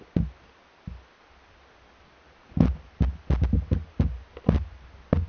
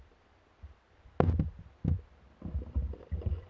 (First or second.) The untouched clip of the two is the first